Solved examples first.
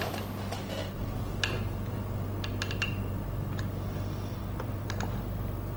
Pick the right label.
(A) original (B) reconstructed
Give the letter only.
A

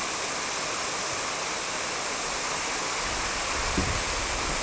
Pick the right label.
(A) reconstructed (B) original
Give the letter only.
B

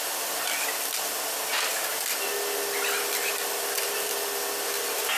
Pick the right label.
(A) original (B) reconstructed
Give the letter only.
A